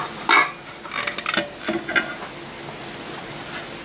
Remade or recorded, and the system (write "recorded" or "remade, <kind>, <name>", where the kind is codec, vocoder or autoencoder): recorded